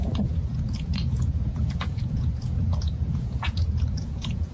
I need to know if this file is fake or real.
fake